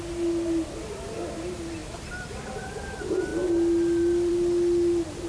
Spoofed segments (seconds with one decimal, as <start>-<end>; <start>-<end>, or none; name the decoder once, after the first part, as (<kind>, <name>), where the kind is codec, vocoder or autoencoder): none